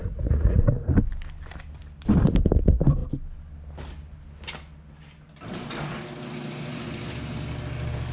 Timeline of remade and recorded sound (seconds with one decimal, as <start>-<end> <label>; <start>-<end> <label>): 0.0-0.6 remade; 0.6-8.1 recorded